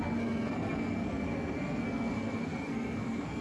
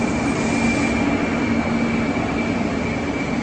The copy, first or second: first